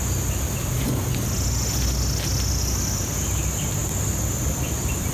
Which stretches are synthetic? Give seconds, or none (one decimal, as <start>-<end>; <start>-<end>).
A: none